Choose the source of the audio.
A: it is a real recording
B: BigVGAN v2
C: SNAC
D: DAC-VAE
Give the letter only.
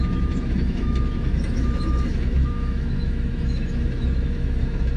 D